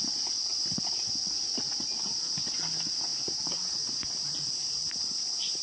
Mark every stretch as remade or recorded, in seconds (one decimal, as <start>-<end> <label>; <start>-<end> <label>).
0.0-5.6 recorded